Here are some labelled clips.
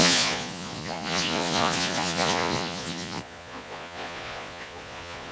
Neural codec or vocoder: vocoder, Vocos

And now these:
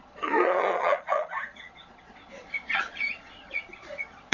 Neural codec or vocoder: vocoder, Vocos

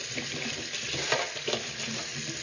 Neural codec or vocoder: none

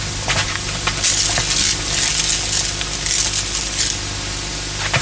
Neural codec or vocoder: none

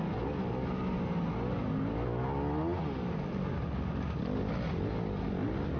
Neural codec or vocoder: none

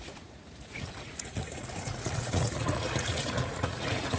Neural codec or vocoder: vocoder, Vocos